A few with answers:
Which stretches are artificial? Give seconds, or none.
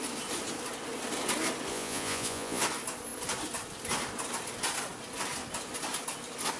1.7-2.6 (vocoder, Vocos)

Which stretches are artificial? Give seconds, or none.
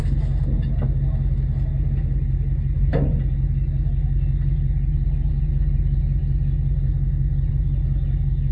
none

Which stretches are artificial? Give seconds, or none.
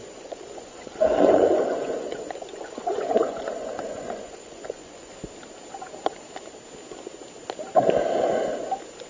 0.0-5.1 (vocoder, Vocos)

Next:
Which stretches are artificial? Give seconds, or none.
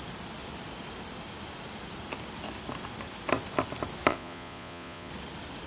4.1-5.1 (vocoder, Vocos)